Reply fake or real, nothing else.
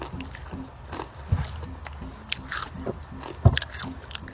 real